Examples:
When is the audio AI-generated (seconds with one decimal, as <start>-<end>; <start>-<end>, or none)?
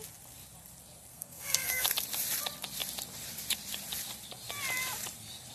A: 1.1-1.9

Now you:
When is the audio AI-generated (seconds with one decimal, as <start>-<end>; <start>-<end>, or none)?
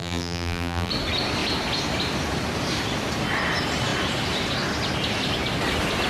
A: 0.0-0.9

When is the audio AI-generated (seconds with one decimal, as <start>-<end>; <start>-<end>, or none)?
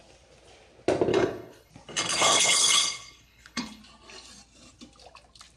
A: 1.1-1.7; 2.1-3.8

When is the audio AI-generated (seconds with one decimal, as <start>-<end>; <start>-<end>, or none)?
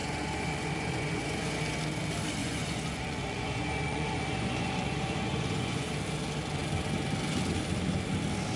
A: 0.0-1.6; 2.4-5.9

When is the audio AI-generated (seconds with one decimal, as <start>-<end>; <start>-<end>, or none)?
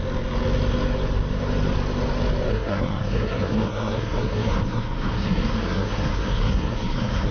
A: 2.5-7.3